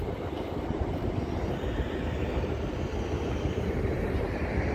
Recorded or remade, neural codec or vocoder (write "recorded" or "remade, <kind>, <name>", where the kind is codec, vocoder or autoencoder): remade, vocoder, BigVGAN v2